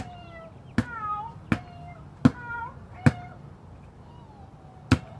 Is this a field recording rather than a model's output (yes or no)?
yes